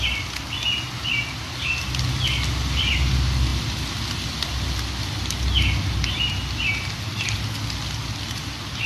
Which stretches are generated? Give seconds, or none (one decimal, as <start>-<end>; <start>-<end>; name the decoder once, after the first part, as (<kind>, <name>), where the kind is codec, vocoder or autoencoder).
none